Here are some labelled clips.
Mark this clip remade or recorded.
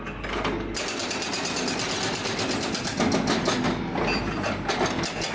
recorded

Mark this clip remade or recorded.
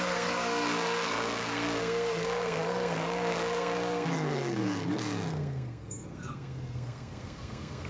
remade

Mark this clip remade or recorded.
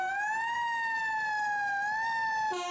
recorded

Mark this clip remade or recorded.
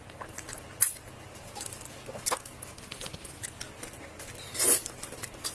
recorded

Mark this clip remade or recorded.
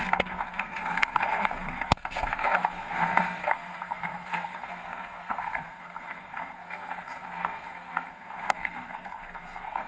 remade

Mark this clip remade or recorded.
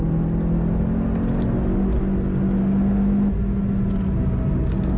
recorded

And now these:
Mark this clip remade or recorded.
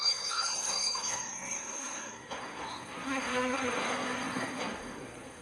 remade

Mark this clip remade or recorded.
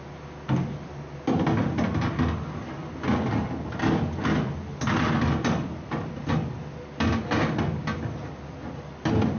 recorded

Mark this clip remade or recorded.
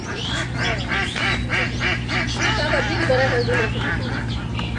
recorded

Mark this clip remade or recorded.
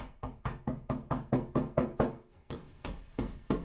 remade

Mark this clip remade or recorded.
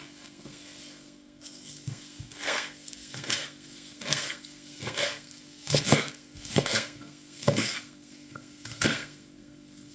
remade